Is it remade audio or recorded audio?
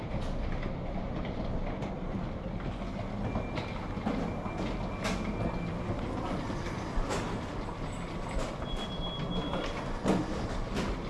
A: recorded